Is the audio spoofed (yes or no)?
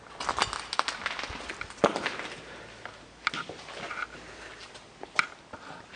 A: no